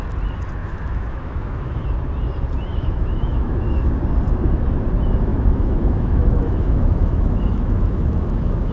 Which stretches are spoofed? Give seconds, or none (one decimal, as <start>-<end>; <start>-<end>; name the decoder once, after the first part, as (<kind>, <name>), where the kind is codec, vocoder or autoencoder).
0.6-1.8 (autoencoder, DAC-VAE); 2.7-3.9; 5.3-8.7